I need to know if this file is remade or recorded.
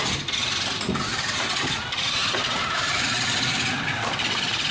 recorded